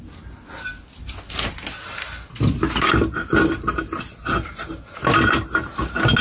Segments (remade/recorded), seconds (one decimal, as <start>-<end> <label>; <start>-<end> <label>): 0.0-6.2 recorded